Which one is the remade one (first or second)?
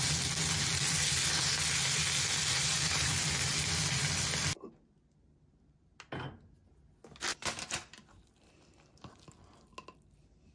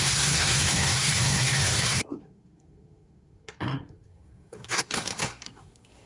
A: second